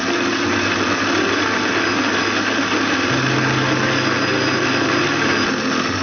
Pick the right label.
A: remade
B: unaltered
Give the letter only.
B